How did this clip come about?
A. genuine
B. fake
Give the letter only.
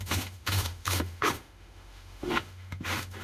B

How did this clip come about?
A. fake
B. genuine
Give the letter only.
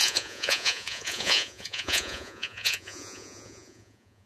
A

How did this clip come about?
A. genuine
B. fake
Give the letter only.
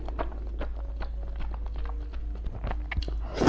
A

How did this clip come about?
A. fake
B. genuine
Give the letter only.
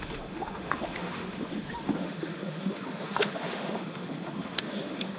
A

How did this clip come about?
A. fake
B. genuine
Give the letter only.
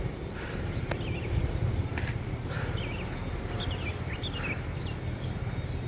B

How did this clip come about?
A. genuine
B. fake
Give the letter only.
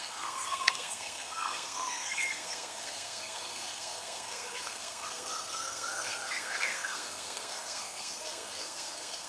B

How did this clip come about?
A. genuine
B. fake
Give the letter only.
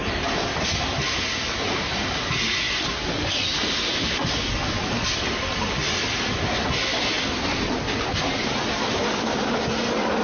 A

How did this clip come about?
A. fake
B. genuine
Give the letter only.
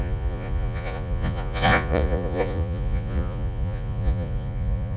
A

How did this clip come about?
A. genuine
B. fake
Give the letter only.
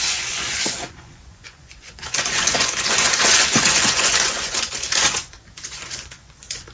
B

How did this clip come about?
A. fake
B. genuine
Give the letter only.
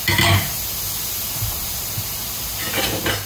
B